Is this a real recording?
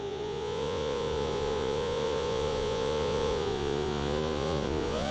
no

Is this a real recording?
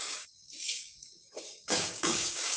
no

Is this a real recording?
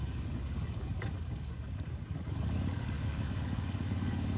no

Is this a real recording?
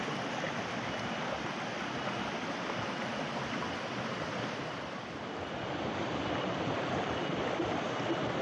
yes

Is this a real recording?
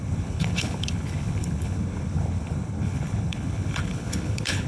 no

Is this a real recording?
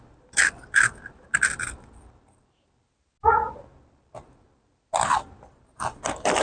yes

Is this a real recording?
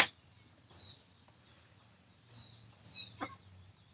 yes